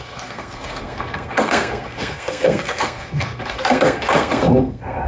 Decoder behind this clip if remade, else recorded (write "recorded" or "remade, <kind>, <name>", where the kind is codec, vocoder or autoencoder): remade, codec, SNAC